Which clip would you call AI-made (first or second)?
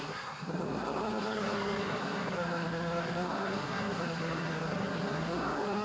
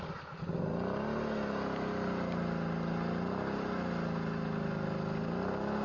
first